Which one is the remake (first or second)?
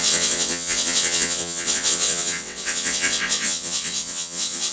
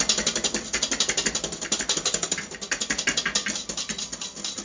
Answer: first